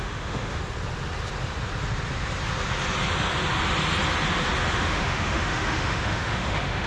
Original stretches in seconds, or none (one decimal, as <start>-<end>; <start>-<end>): 0.6-4.7